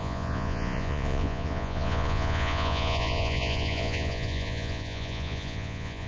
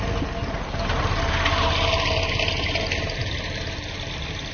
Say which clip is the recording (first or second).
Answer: second